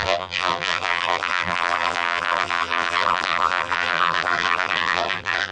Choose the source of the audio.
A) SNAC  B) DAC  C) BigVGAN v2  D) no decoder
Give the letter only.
C